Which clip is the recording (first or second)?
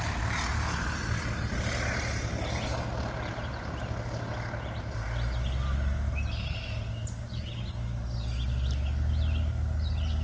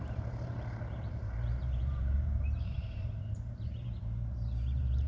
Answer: first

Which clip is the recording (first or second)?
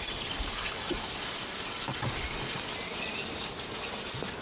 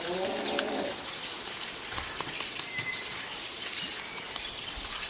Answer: first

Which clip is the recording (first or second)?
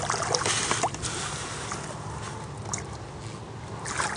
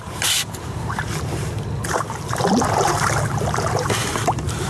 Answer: first